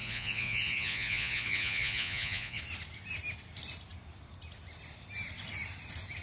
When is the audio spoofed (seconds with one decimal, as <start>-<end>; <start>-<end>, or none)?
0.0-2.6